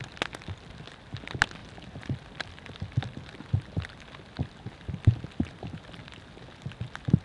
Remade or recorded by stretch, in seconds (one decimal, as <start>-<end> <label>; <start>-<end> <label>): 0.0-1.6 recorded; 1.6-5.9 remade; 5.9-7.2 recorded